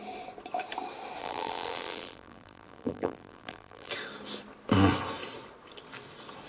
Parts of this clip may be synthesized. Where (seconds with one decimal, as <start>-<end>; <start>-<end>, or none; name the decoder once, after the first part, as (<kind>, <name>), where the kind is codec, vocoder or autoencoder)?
1.2-3.9 (vocoder, BigVGAN v2)